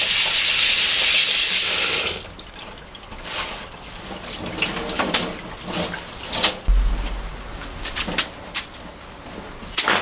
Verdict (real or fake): real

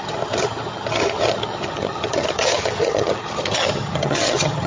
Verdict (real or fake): fake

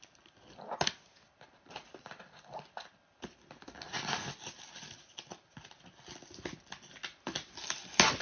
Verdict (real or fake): real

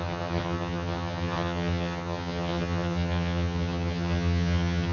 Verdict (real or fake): fake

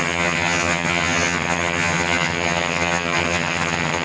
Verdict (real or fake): fake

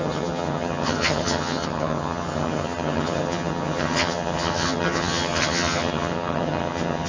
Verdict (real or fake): fake